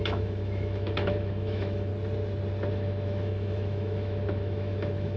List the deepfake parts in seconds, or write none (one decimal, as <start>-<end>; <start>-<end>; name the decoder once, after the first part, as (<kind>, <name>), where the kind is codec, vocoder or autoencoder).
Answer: 0.0-1.9 (autoencoder, DAC-VAE); 2.7-5.2